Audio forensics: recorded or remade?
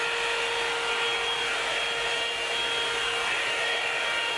recorded